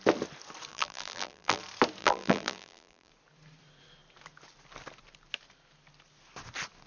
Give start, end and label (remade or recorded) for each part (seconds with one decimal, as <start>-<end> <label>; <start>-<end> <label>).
0.0-0.7 recorded; 0.7-1.6 remade; 1.6-2.0 recorded; 2.0-3.1 remade; 3.1-6.9 recorded